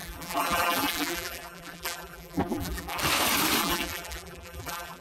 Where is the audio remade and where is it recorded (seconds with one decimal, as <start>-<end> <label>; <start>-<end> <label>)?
0.0-3.0 remade; 3.0-3.6 recorded; 3.6-5.0 remade